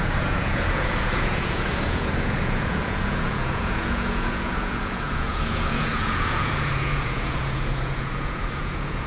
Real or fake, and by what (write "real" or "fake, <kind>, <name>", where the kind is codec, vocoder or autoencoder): fake, vocoder, Vocos